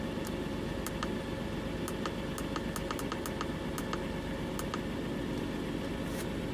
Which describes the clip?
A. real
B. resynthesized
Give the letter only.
A